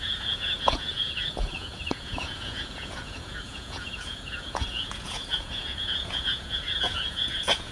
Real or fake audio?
fake